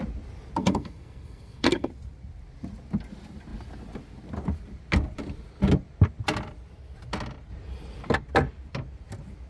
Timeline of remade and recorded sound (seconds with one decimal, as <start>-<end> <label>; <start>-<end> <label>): 0.0-0.6 recorded; 0.6-1.9 remade; 1.9-9.5 recorded